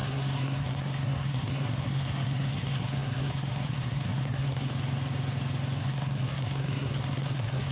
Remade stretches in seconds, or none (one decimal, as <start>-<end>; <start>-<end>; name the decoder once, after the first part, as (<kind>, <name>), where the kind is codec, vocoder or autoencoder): 0.0-4.7 (codec, SNAC); 5.8-7.7